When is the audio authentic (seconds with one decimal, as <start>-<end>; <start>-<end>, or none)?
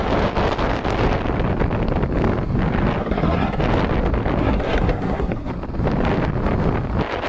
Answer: 0.0-3.0; 3.6-4.4; 5.5-7.3